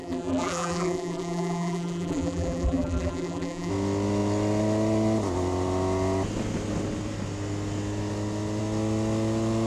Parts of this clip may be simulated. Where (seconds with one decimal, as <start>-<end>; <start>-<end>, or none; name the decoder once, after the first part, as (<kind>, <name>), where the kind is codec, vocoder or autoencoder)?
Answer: 0.0-3.7 (vocoder, BigVGAN v2)